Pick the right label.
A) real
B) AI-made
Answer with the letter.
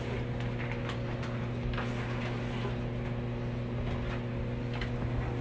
A